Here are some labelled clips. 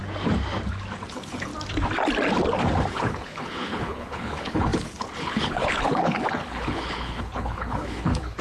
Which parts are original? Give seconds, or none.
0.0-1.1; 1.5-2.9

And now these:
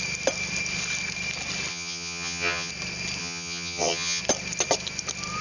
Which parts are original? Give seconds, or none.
0.0-1.7; 2.7-3.2; 4.2-5.4

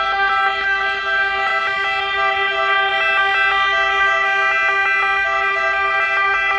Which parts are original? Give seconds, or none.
1.5-2.0; 2.9-5.5

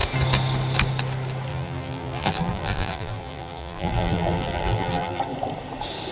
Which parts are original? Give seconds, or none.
0.0-1.5; 5.2-6.1

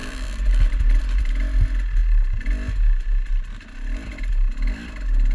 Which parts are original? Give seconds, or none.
0.0-5.3